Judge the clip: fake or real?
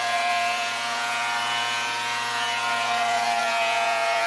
fake